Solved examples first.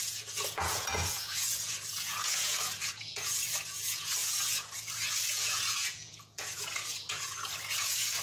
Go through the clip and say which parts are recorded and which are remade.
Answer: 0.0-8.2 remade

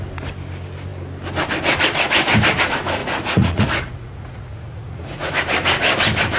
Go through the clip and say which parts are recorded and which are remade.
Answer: 0.0-3.0 recorded; 3.0-5.3 remade; 5.3-6.4 recorded